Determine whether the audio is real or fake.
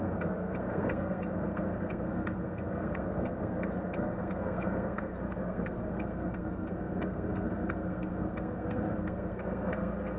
fake